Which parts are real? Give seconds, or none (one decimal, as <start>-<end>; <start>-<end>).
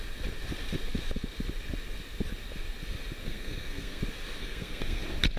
0.0-3.2; 4.0-4.4; 5.0-5.4